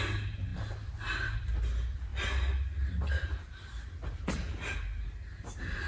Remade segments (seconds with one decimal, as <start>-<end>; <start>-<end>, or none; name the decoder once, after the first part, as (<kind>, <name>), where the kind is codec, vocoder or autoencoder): none